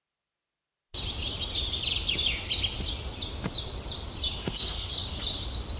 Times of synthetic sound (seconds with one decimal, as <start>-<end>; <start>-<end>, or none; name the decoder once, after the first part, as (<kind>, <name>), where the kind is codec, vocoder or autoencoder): 4.4-4.9 (codec, SNAC)